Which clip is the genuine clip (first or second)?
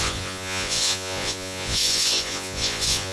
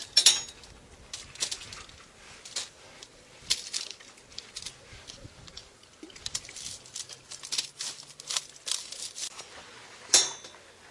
second